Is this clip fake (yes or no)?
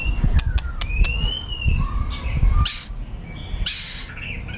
no